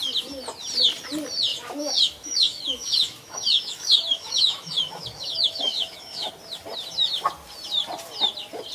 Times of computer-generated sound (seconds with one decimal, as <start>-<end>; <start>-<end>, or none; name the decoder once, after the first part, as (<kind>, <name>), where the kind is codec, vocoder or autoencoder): 1.5-6.3 (autoencoder, DAC-VAE)